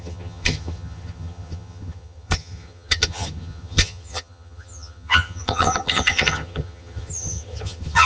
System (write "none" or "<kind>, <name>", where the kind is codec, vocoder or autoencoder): vocoder, HiFi-GAN